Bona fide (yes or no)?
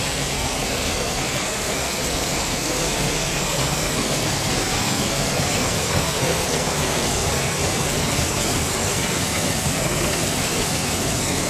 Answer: no